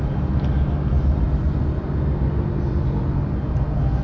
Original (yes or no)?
yes